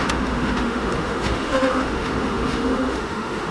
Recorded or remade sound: remade